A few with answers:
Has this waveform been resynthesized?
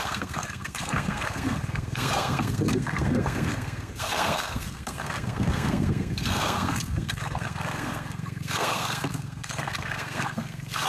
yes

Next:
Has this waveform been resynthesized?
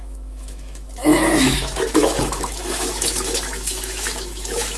yes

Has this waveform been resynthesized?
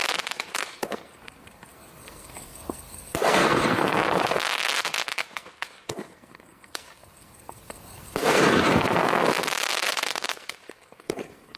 yes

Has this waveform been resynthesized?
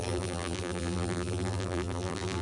yes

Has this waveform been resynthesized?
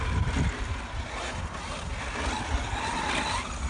no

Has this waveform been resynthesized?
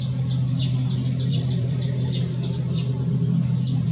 yes